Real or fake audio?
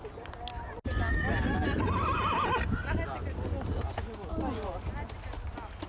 real